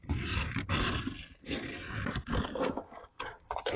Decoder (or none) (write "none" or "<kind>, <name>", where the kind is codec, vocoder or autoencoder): none